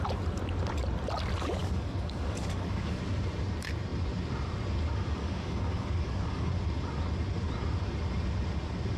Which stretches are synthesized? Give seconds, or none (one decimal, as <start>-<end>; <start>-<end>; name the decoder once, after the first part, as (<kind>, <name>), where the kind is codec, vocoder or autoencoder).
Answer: 1.6-3.0 (codec, DAC); 5.2-6.5